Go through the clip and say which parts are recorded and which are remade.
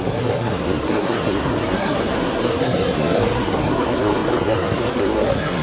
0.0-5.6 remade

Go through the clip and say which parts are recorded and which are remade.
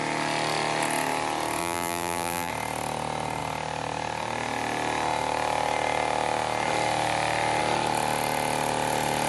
0.0-1.6 recorded; 1.6-2.5 remade; 2.5-9.3 recorded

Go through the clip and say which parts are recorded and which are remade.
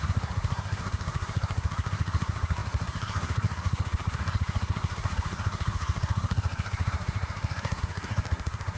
0.0-8.8 remade